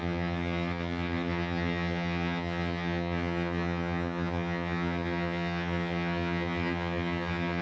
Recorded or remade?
remade